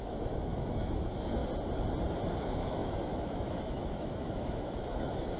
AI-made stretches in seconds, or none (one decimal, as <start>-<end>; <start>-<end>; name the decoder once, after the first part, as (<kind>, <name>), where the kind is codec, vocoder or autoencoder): 0.0-1.4 (autoencoder, DAC-VAE); 2.4-5.4